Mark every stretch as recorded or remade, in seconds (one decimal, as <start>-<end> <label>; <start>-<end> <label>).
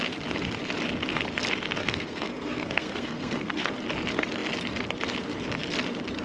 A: 0.0-1.8 recorded; 1.8-3.7 remade; 3.7-6.2 recorded